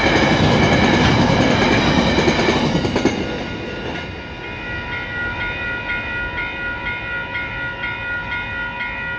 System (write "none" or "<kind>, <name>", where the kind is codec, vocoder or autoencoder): none